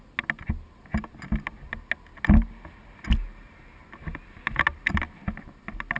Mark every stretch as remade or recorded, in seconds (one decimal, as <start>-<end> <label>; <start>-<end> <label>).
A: 0.0-6.0 recorded